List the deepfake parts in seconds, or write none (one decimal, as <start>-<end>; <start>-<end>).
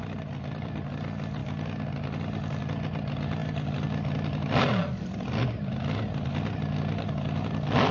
none